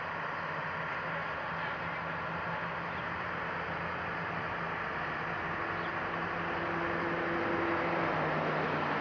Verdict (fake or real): real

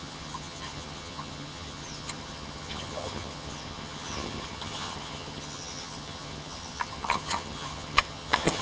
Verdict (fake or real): fake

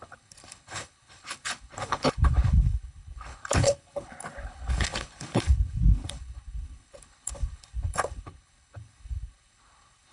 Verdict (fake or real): fake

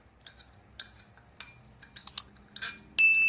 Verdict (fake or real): real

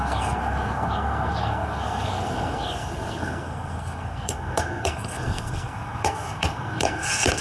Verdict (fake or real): fake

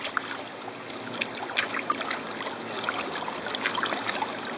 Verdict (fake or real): real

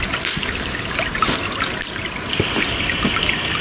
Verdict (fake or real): fake